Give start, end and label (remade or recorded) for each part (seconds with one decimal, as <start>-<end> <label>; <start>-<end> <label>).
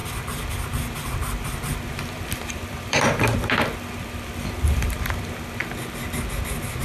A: 0.0-5.6 remade; 5.6-6.8 recorded